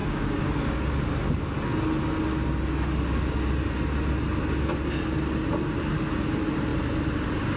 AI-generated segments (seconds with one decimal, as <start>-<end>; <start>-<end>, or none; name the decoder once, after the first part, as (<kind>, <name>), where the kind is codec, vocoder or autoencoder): 0.0-0.8 (codec, DAC)